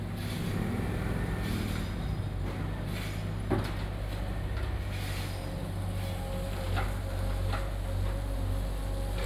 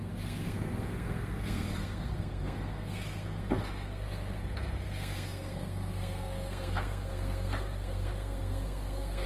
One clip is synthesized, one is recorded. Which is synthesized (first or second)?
second